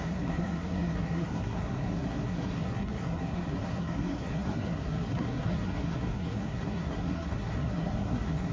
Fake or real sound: fake